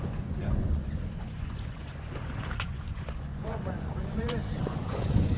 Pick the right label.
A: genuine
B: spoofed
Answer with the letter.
B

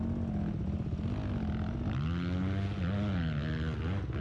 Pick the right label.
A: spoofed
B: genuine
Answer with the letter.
B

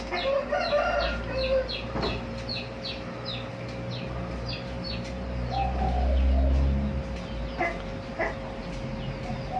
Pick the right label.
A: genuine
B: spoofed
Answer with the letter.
A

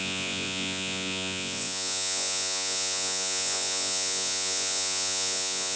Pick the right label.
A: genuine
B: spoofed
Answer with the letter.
B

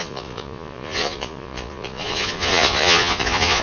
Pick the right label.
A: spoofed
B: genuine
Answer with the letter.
A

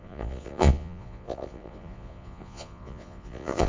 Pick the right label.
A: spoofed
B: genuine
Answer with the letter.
A